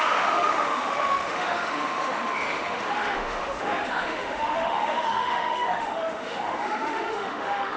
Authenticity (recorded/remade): remade